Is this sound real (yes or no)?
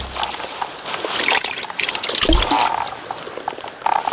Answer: yes